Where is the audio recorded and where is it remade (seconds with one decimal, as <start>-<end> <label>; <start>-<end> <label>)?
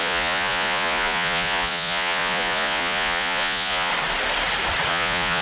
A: 0.0-3.9 remade; 3.9-4.9 recorded; 4.9-5.4 remade